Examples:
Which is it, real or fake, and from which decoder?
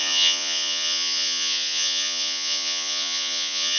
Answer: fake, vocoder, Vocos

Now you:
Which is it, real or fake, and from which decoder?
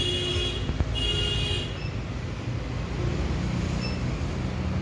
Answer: real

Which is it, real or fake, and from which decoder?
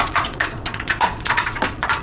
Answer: fake, vocoder, Vocos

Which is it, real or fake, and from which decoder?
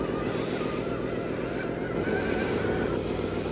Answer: real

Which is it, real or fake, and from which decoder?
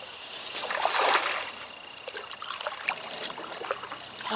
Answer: real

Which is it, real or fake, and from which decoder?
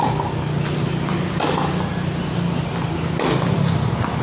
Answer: real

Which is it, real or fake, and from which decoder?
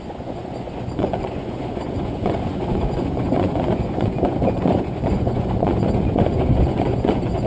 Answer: fake, vocoder, Vocos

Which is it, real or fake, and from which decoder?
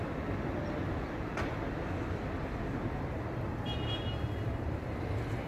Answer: real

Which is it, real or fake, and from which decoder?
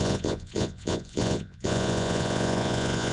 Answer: fake, vocoder, Vocos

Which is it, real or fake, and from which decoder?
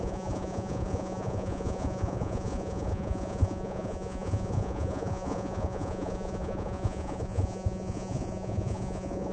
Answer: fake, vocoder, Vocos